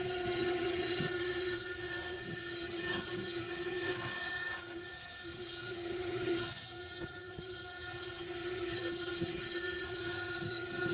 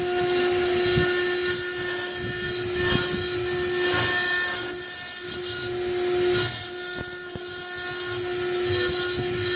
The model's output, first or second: first